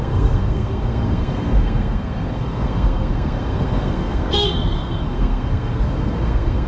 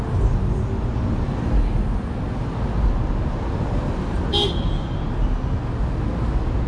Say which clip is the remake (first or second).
first